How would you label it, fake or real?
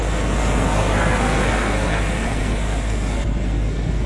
fake